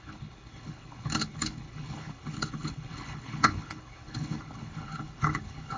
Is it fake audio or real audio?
fake